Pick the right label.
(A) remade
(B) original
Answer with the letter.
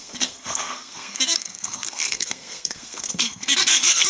A